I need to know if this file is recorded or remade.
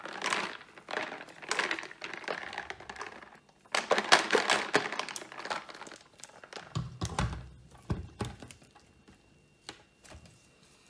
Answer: recorded